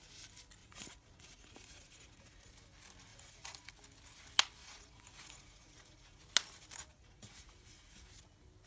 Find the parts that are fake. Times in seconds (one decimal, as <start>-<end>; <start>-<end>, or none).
0.6-2.5; 3.1-3.7; 4.6-6.2; 6.9-8.1